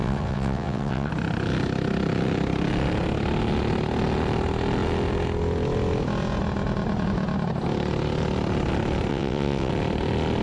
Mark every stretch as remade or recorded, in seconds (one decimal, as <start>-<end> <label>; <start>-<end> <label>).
0.0-1.1 remade; 1.1-9.1 recorded; 9.1-9.7 remade; 9.7-10.4 recorded